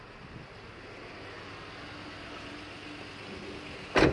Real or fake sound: real